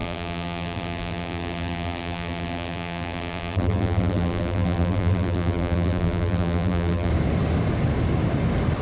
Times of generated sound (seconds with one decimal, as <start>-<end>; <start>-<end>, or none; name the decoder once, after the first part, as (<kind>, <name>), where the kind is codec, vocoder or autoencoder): 0.0-7.1 (vocoder, BigVGAN v2)